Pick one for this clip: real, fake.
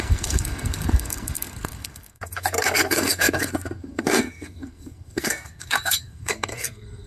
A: fake